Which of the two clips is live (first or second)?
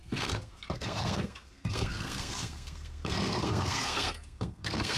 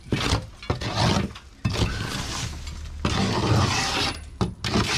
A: second